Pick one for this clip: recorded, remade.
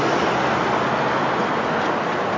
recorded